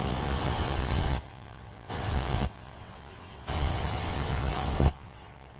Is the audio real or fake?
fake